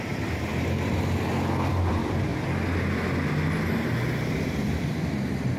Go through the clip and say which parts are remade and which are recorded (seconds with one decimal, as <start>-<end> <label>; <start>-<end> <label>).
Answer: 0.0-0.5 remade; 0.5-1.7 recorded; 1.7-2.3 remade; 2.3-3.7 recorded; 3.7-5.6 remade